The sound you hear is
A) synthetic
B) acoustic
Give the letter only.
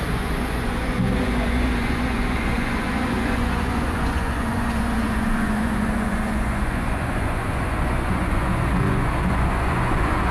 A